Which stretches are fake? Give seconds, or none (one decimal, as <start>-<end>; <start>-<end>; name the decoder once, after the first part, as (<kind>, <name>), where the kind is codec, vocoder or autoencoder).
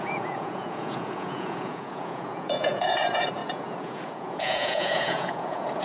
0.0-5.8 (vocoder, Vocos)